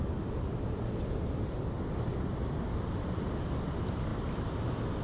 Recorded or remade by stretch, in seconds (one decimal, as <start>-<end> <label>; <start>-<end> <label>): 0.0-5.0 recorded